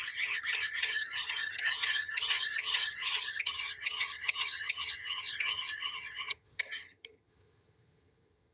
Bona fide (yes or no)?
no